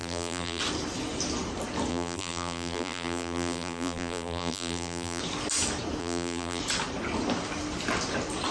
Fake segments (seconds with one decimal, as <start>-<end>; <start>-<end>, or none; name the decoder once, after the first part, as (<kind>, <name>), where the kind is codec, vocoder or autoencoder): 0.0-0.6 (vocoder, BigVGAN v2); 1.9-5.2; 6.0-6.6